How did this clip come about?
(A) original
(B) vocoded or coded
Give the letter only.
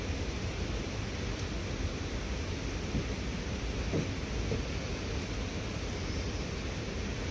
A